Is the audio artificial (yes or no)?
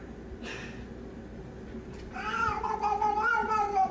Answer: no